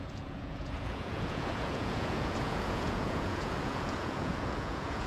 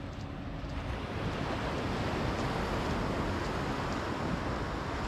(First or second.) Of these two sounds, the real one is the second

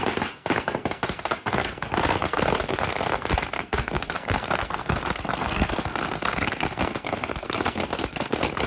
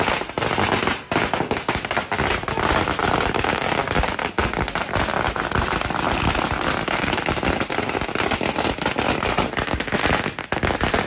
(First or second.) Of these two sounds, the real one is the second